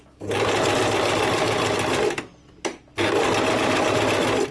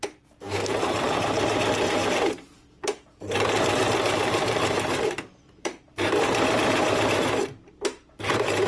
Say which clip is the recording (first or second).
first